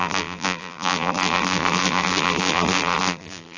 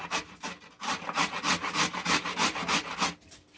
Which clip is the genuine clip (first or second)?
second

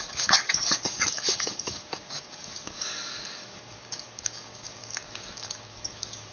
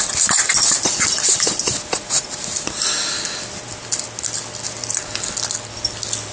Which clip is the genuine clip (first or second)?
second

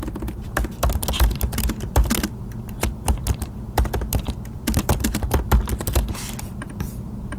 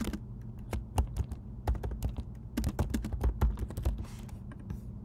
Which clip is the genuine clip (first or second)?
second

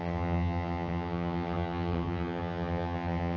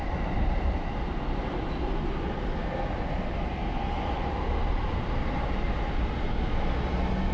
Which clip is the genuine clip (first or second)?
second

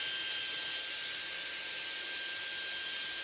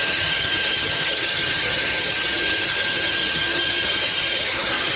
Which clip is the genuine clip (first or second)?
first